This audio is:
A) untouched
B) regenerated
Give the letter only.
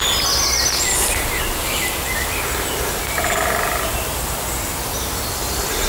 A